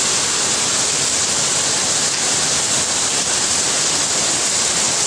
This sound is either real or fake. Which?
real